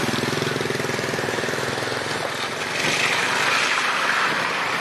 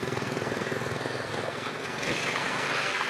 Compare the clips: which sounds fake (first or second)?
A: second